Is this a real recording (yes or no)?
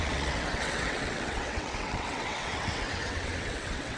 no